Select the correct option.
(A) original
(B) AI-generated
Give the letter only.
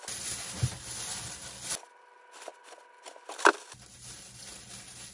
A